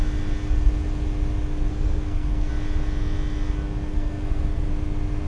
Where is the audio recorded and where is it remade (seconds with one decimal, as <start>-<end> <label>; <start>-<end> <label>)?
0.0-1.7 recorded; 1.7-2.5 remade; 2.5-3.9 recorded; 3.9-4.7 remade; 4.7-5.3 recorded